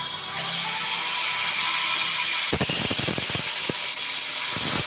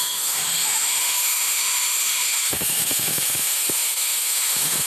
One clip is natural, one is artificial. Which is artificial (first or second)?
second